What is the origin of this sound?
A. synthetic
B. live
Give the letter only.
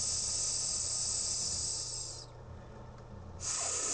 B